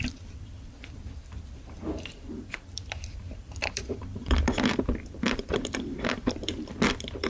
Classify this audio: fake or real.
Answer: fake